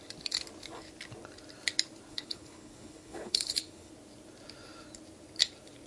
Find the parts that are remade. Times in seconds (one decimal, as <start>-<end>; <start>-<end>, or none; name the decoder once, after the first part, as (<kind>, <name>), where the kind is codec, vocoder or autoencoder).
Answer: 2.1-3.9 (codec, HILCodec)